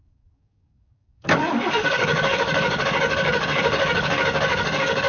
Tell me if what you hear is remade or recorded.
remade